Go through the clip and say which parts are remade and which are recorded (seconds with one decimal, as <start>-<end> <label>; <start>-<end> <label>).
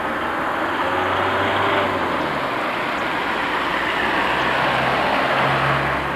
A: 0.0-3.7 recorded; 3.7-4.2 remade; 4.2-6.2 recorded